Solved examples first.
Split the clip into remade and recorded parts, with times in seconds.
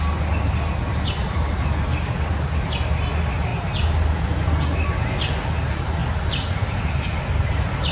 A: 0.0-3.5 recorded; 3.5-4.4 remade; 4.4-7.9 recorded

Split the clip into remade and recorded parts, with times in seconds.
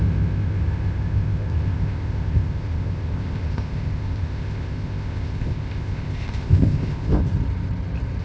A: 0.0-7.2 remade; 7.2-8.2 recorded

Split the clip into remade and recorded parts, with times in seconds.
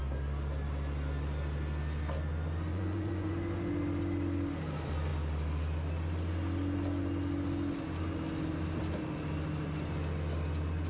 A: 0.0-2.7 recorded; 2.7-3.3 remade; 3.3-10.9 recorded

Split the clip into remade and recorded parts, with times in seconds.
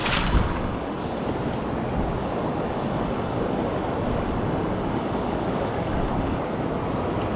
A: 0.0-1.2 remade; 1.2-2.2 recorded; 2.2-6.4 remade; 6.4-7.4 recorded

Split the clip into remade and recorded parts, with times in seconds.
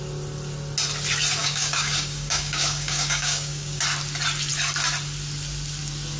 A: 0.0-1.4 recorded; 1.4-3.8 remade; 3.8-6.2 recorded